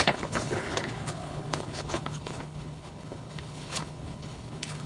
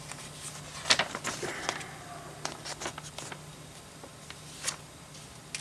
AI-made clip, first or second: first